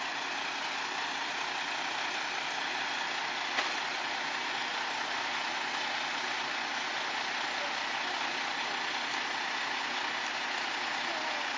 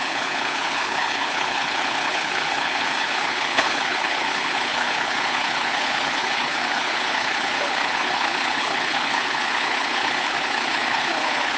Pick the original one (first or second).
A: first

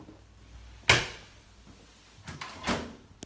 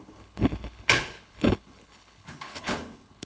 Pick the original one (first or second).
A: first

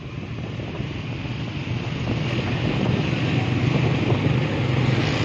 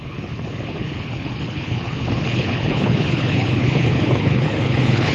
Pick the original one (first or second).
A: first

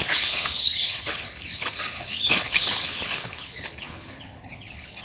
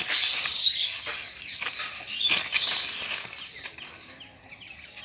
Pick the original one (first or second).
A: second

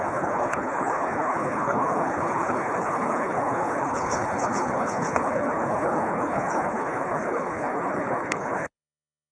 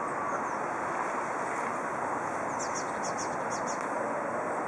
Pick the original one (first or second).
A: second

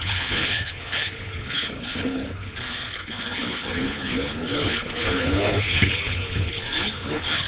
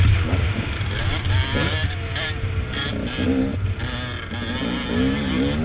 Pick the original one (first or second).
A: second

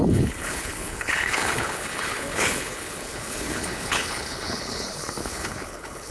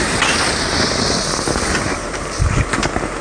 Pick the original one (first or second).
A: second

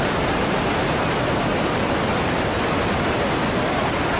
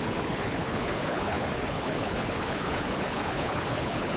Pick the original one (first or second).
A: first